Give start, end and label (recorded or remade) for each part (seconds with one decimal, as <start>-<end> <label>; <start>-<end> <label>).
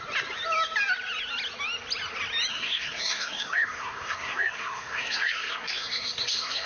0.0-2.5 recorded; 2.5-6.7 remade